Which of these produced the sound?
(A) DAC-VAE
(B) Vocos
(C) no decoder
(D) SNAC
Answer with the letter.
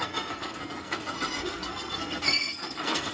D